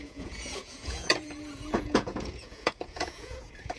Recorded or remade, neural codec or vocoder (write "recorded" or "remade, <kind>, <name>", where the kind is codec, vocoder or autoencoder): remade, vocoder, Vocos